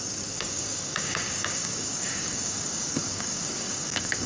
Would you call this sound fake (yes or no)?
yes